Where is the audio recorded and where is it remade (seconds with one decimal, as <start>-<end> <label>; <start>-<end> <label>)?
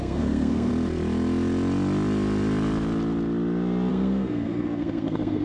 0.0-0.7 remade; 0.7-3.9 recorded; 3.9-5.4 remade